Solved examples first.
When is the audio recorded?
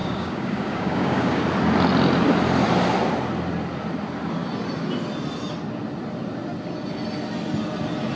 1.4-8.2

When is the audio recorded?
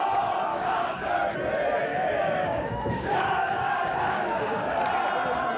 0.0-0.5; 1.1-1.9; 4.8-5.6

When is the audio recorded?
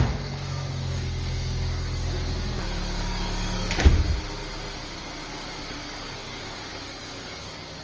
3.9-5.3